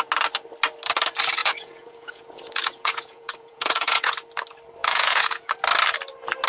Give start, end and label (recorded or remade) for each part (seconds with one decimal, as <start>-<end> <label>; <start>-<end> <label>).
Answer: 0.0-1.4 recorded; 1.4-4.1 remade; 4.1-4.8 recorded; 4.8-5.5 remade; 5.5-6.5 recorded